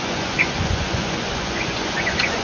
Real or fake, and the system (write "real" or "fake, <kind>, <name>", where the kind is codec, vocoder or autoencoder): fake, vocoder, Vocos